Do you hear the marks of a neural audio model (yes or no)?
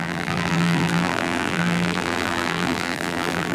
yes